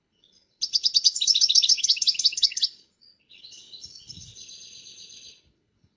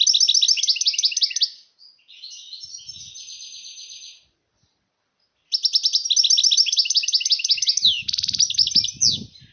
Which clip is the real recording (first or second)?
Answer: second